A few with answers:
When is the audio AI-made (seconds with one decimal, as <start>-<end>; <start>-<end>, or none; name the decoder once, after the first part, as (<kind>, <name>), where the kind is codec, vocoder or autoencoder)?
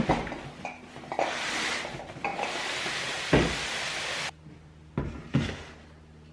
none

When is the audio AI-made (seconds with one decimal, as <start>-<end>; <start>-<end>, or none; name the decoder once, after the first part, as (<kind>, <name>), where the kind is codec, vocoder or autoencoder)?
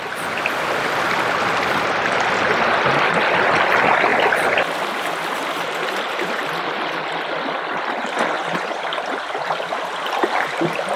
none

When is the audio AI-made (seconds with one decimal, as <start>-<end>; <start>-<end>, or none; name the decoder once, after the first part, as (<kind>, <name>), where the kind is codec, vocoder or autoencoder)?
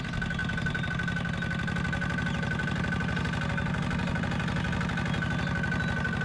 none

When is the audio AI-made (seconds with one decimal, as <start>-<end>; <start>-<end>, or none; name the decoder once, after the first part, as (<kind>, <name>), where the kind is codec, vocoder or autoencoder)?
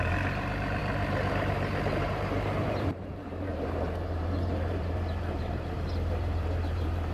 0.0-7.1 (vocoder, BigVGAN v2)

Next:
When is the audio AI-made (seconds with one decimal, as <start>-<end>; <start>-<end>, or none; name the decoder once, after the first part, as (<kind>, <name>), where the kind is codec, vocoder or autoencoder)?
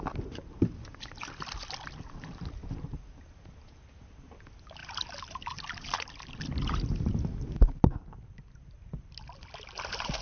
none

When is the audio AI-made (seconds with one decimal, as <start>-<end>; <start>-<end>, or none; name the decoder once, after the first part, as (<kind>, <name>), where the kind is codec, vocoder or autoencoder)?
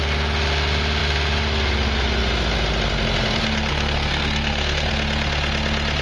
3.7-4.9 (codec, SNAC)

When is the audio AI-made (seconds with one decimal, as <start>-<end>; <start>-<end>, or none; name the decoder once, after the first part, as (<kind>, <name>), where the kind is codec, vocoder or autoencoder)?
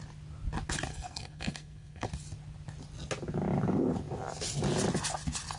0.9-2.1 (codec, SNAC)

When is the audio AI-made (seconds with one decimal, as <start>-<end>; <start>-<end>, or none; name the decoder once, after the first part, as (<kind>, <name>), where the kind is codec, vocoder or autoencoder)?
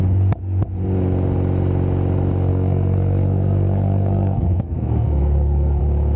2.5-5.8 (codec, SNAC)